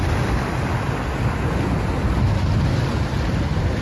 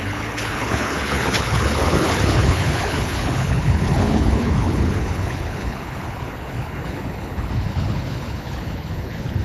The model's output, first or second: second